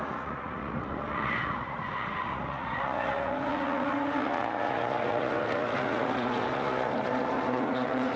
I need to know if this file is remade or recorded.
remade